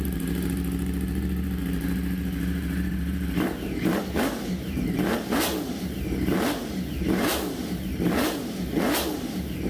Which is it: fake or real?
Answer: fake